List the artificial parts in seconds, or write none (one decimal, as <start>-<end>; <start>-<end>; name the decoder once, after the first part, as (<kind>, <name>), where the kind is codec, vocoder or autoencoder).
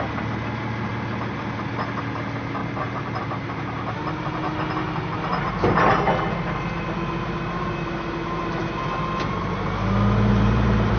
2.6-3.2 (vocoder, BigVGAN v2); 10.3-11.0